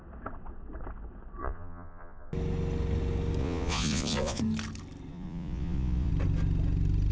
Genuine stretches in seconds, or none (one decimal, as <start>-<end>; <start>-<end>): 0.0-1.4; 2.3-3.4; 4.4-5.1; 6.1-7.1